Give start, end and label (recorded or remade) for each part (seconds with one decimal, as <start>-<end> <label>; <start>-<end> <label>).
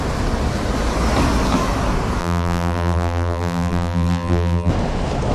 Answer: 0.0-2.2 recorded; 2.2-4.7 remade; 4.7-5.3 recorded